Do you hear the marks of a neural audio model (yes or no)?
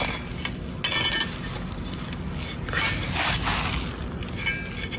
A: no